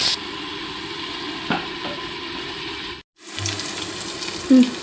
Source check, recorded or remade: recorded